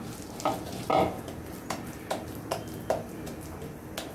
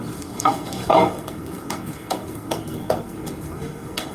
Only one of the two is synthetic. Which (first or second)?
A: second